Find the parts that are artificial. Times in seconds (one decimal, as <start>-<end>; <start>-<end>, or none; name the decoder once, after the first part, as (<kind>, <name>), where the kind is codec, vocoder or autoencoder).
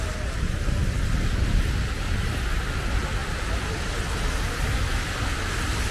none